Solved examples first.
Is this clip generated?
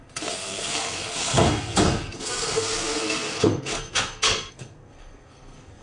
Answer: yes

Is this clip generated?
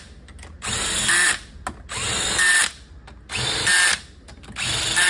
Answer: no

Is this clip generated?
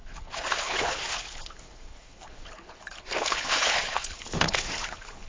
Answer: yes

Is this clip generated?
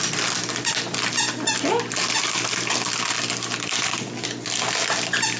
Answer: no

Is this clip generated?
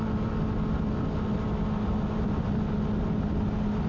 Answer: no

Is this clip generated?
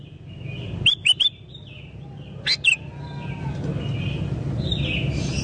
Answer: no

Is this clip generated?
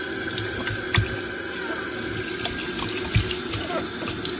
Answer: no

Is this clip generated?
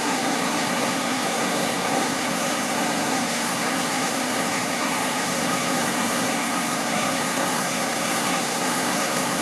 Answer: yes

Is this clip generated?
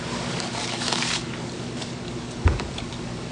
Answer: yes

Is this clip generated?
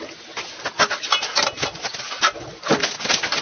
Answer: no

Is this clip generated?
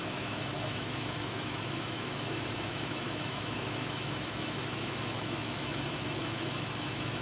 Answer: yes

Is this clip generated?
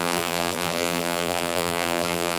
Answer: yes